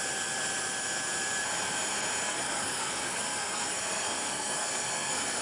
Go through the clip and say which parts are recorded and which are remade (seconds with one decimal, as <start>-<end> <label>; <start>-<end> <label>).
0.0-2.2 recorded; 2.2-5.4 remade